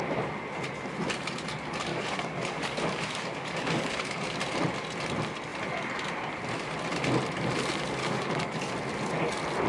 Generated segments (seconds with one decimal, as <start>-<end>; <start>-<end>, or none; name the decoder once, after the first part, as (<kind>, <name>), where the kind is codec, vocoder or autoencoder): 1.9-4.4 (codec, DAC); 8.0-8.7